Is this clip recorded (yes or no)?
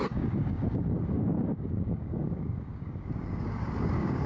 no